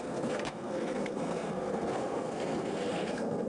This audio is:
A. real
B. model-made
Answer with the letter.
B